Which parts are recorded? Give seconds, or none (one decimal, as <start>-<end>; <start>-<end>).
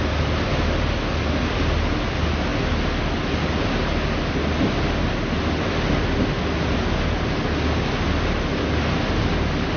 0.0-9.8